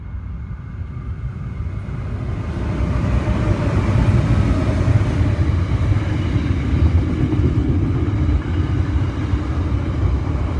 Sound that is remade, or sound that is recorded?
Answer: recorded